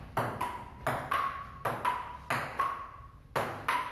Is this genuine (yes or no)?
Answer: yes